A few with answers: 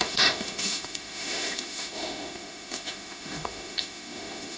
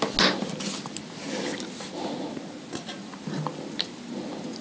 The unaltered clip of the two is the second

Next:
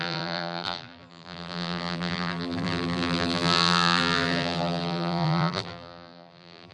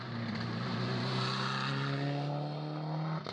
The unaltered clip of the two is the second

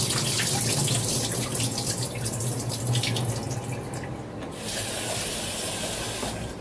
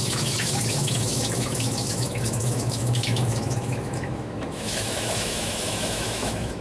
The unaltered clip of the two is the first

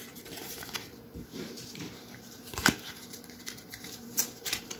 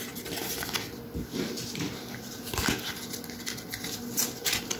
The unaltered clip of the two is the second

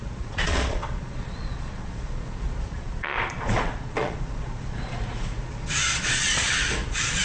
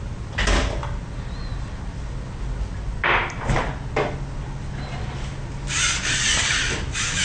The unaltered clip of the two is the second